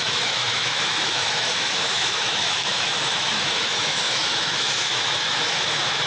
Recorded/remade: remade